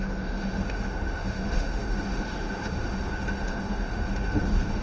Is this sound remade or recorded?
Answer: remade